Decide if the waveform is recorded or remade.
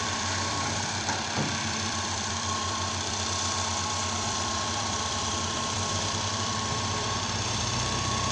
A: remade